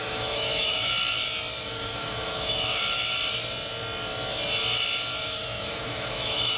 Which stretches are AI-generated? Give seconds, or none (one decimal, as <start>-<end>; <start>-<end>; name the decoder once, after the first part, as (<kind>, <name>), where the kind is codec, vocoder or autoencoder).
0.0-0.9 (autoencoder, DAC-VAE); 1.6-2.8; 5.2-6.6